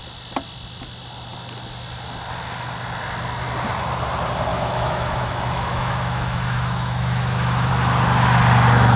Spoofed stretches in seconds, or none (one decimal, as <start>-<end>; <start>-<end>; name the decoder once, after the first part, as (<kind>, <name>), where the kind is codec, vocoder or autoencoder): 4.5-7.7 (autoencoder, DAC-VAE)